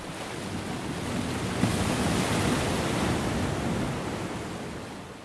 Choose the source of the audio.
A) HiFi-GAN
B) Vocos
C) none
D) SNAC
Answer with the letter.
C